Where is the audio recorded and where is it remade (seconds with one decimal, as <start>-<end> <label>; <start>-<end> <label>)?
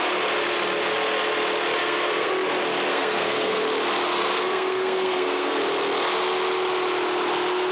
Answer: 0.0-1.8 recorded; 1.8-2.3 remade; 2.3-2.9 recorded; 2.9-3.6 remade; 3.6-4.1 recorded; 4.1-5.6 remade; 5.6-7.7 recorded